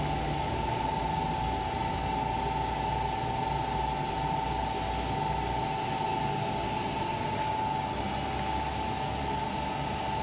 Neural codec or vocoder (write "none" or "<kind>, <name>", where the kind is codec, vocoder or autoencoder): none